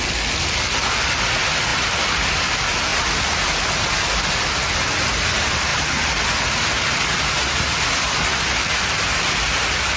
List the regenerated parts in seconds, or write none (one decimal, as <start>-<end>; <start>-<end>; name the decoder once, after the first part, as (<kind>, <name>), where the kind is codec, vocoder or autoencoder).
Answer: none